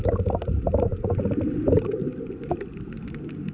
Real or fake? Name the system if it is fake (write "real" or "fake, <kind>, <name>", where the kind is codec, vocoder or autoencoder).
real